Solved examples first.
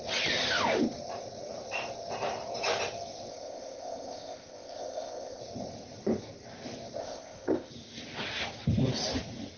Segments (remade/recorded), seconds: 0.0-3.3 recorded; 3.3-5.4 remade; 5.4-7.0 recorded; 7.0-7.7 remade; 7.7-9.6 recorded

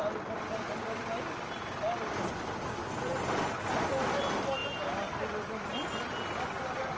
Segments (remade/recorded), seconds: 0.0-7.0 recorded

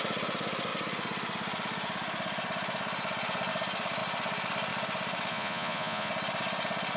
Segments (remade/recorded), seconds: 0.0-5.3 recorded; 5.3-6.1 remade; 6.1-7.0 recorded

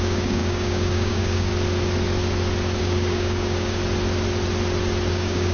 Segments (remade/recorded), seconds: 0.0-1.5 remade; 1.5-2.8 recorded; 2.8-3.8 remade; 3.8-5.1 recorded; 5.1-5.5 remade

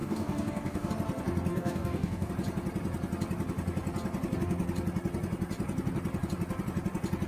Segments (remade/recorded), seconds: 0.0-0.9 remade; 0.9-1.5 recorded; 1.5-2.3 remade; 2.3-7.3 recorded

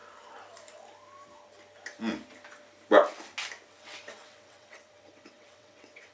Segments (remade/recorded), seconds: 0.0-3.7 recorded; 3.7-6.1 remade

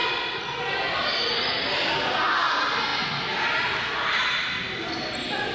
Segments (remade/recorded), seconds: 0.0-5.5 recorded